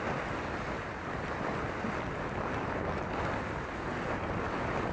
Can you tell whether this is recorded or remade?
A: recorded